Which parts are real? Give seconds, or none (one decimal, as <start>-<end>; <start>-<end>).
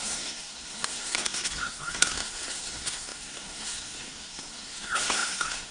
none